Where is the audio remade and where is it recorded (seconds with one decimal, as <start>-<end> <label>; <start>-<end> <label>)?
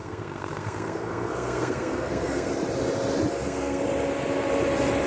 0.0-2.5 remade; 2.5-3.3 recorded; 3.3-3.8 remade; 3.8-5.1 recorded